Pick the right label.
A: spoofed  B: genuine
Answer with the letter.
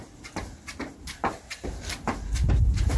B